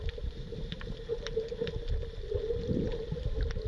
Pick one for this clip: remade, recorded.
recorded